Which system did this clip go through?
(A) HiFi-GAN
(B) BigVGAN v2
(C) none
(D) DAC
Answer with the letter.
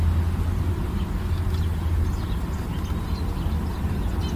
C